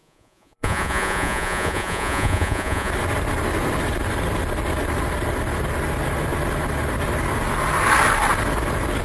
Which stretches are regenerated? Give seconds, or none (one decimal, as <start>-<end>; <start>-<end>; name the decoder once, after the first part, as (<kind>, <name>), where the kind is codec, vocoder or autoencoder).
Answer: 0.0-2.9 (vocoder, Vocos)